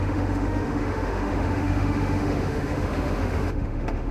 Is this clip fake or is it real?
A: fake